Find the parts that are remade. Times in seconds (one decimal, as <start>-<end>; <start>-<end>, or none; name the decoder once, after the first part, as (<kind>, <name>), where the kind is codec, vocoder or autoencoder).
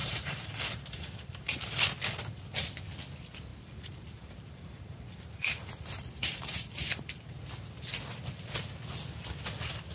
0.0-1.4 (vocoder, BigVGAN v2); 3.5-7.4